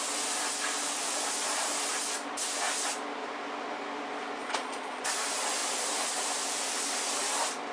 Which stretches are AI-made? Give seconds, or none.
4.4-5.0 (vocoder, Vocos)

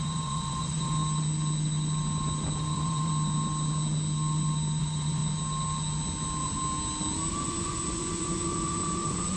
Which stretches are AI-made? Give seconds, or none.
0.0-1.0 (vocoder, Vocos); 2.6-3.1; 4.8-5.2; 7.3-9.4

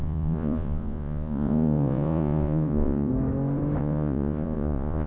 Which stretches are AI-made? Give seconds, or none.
0.0-3.1 (vocoder, Vocos); 3.8-5.1

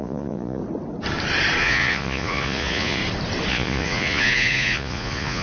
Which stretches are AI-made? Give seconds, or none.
0.0-0.6 (vocoder, Vocos); 1.6-3.0; 3.5-5.4

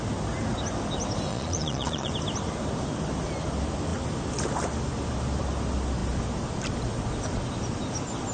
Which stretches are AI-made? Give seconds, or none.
1.3-2.1 (vocoder, Vocos)